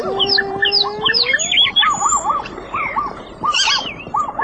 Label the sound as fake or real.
fake